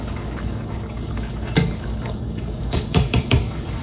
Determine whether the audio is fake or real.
fake